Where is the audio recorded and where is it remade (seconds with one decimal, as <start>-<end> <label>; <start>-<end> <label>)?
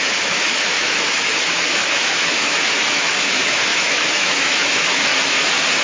0.0-5.1 remade; 5.1-5.8 recorded